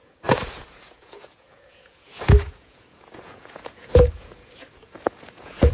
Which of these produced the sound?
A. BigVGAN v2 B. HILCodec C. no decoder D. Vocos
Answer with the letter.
D